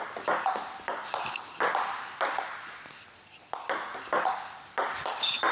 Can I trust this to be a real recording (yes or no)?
yes